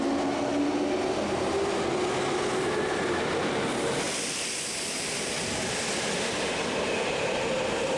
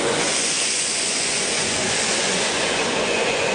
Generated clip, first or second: second